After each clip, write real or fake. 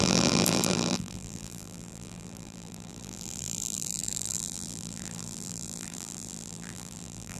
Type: fake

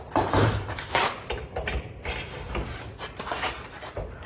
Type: fake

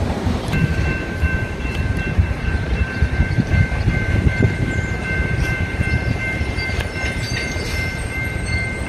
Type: fake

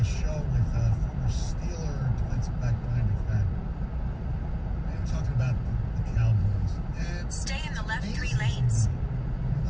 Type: real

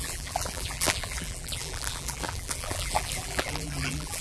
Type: fake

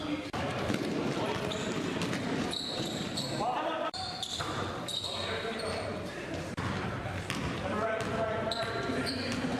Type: fake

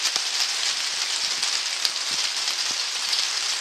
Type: fake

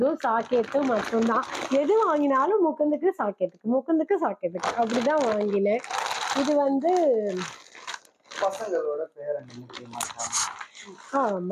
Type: real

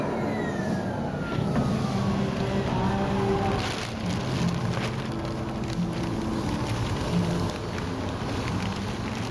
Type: real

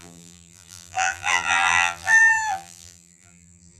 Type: fake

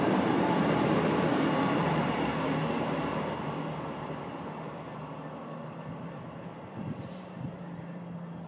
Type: fake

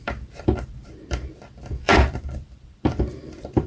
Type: fake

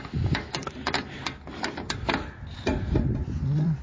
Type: fake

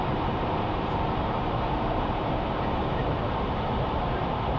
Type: fake